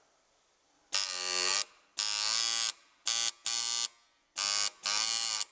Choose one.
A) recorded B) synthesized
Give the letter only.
A